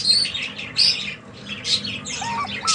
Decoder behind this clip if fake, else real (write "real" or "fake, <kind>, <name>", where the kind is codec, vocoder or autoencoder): real